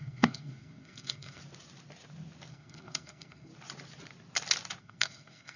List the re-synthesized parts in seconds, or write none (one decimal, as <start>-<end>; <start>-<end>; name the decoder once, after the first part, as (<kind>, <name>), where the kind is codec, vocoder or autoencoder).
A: 0.0-1.4 (codec, SNAC); 2.5-3.5; 4.8-5.6

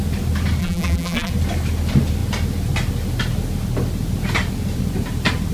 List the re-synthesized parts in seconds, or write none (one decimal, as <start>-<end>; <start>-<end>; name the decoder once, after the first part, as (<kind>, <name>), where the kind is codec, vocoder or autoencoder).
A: 0.6-1.3 (vocoder, BigVGAN v2)

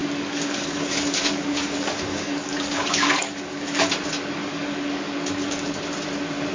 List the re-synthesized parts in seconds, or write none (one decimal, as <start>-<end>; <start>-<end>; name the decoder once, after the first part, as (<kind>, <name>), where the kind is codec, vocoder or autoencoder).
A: 0.0-3.9 (codec, DAC); 4.4-5.8

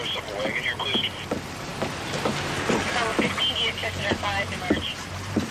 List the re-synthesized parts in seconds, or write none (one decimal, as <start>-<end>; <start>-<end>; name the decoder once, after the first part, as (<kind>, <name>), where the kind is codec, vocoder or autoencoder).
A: 3.8-5.5 (vocoder, BigVGAN v2)

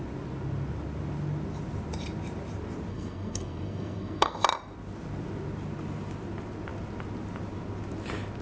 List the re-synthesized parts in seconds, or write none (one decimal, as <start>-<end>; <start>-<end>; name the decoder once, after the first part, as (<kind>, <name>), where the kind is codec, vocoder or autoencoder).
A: 2.9-4.4 (codec, SNAC)

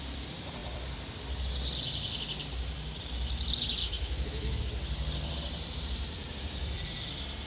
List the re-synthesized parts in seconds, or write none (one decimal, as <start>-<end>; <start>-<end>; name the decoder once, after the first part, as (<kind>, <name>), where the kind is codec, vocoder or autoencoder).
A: 3.8-4.6 (autoencoder, DAC-VAE)

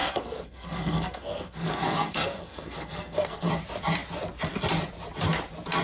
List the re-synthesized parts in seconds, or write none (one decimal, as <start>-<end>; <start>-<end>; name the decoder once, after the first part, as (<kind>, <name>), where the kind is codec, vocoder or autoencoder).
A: 0.0-3.5 (codec, SNAC)

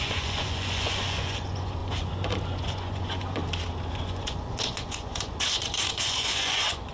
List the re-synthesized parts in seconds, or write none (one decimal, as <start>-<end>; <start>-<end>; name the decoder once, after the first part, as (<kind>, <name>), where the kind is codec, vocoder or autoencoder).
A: 0.0-3.4 (vocoder, Vocos); 3.9-6.9